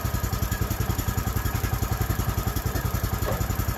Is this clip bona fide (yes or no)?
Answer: no